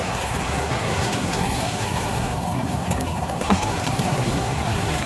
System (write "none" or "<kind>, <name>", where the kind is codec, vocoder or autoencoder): codec, SNAC